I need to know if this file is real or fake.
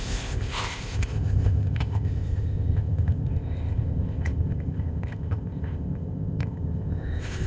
fake